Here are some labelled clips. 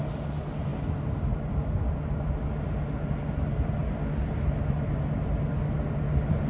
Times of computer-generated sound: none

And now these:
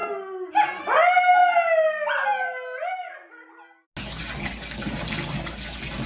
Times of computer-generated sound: none

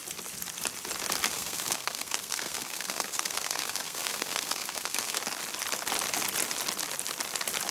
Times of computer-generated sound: 1.3-5.2 (codec, SNAC)

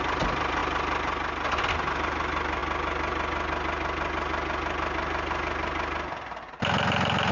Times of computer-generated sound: none

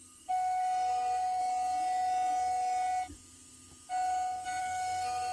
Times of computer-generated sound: 0.0-1.4 (codec, SNAC); 4.6-5.3